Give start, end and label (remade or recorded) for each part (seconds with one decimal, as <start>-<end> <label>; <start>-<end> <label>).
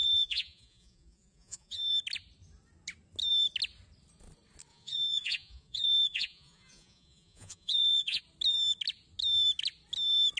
0.0-1.9 remade; 1.9-4.7 recorded; 4.7-8.2 remade; 8.2-10.4 recorded